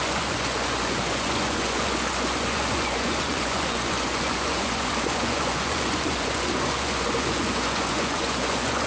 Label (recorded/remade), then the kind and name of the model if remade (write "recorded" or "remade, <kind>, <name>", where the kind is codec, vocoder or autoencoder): remade, vocoder, Vocos